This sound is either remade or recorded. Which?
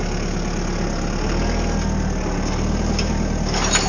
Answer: recorded